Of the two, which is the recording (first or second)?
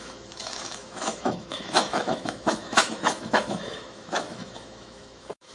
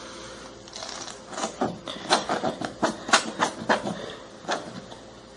second